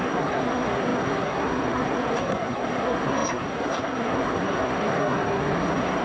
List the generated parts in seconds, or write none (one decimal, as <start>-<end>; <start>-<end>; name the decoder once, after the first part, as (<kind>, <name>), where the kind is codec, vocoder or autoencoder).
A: 0.0-6.0 (codec, SNAC)